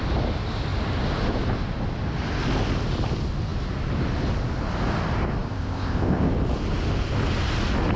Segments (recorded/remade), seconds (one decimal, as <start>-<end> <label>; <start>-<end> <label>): 0.0-5.5 recorded; 5.5-6.3 remade; 6.3-8.0 recorded